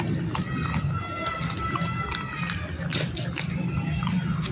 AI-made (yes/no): no